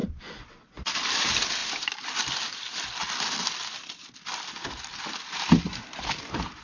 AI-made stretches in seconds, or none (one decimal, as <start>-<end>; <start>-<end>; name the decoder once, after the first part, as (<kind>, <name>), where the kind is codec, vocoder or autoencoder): none